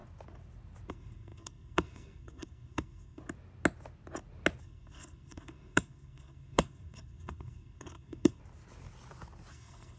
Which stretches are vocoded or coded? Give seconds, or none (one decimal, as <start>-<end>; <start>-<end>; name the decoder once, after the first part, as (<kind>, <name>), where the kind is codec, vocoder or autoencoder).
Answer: 0.9-3.2 (codec, SNAC); 4.6-8.4; 9.5-10.0